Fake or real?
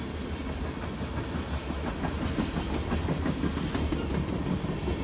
real